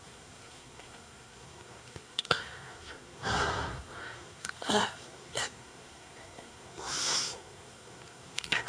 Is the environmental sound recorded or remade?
remade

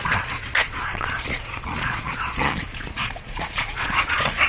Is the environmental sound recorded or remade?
remade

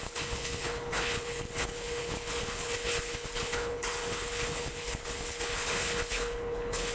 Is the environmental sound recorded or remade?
remade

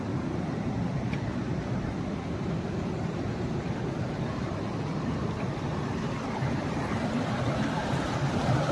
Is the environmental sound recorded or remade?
remade